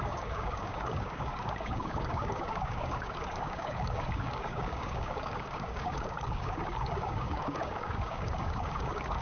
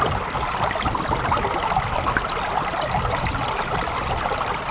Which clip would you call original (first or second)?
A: second